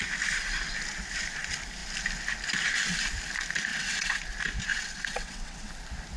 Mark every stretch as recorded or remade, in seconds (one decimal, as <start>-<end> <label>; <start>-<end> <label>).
0.0-3.7 recorded; 3.7-4.2 remade; 4.2-4.7 recorded; 4.7-5.7 remade; 5.7-6.2 recorded